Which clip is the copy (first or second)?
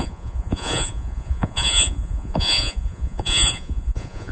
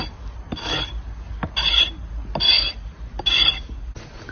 first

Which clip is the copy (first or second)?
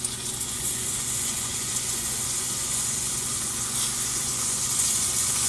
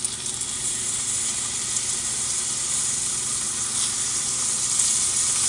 first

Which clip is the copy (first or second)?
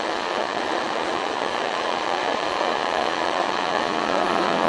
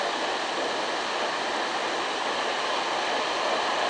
first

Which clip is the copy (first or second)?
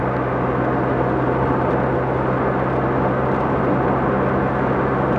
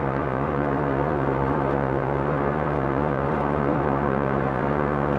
second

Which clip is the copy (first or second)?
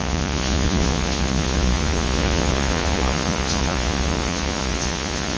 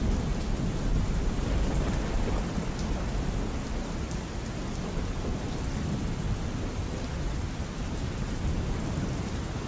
first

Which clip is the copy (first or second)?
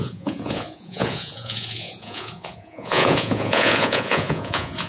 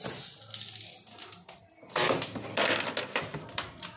first